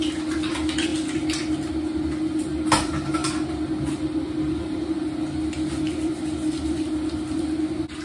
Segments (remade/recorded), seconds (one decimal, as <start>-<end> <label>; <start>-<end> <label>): 0.0-8.0 recorded